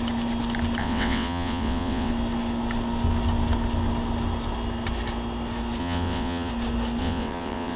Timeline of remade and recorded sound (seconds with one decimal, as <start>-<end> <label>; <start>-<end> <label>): 0.0-0.8 recorded; 0.8-2.1 remade; 2.1-5.8 recorded; 5.8-6.5 remade; 6.5-7.0 recorded; 7.0-7.8 remade